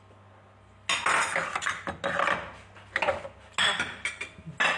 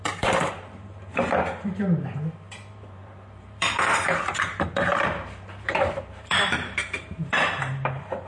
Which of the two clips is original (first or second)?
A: first